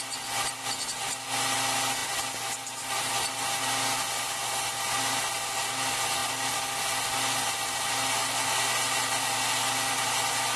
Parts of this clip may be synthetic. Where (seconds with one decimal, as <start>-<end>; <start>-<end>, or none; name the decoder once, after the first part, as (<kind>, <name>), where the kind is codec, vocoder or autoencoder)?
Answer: none